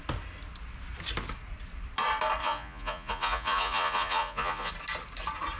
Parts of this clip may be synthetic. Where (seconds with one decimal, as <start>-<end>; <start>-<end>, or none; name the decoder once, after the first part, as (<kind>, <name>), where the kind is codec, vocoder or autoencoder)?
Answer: 2.4-4.7 (vocoder, Vocos)